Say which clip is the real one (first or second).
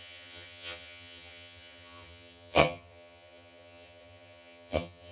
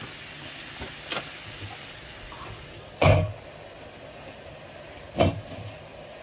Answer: second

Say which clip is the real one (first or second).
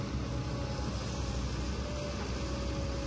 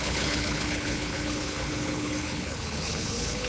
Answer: first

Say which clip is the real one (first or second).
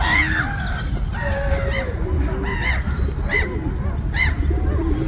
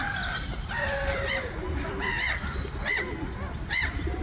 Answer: first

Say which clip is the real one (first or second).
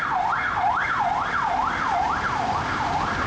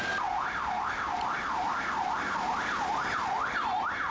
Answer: second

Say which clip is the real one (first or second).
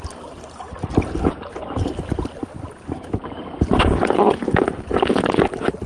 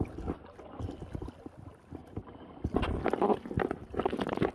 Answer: second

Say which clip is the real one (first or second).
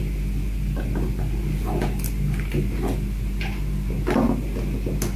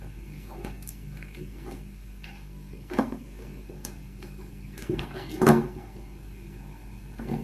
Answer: first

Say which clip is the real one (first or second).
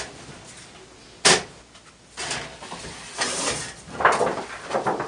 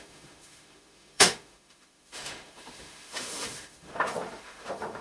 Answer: first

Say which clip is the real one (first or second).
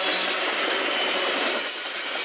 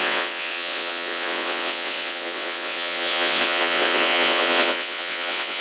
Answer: first